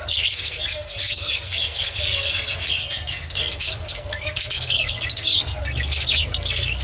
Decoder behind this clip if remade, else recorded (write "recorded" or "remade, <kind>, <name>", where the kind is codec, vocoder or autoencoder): remade, codec, SNAC